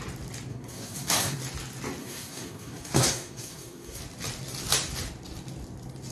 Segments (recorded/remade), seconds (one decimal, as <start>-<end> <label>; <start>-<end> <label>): 0.0-0.5 recorded; 0.5-1.4 remade; 1.4-2.0 recorded; 2.0-4.0 remade; 4.0-6.1 recorded